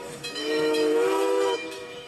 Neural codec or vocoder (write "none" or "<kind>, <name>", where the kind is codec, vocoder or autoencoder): autoencoder, DAC-VAE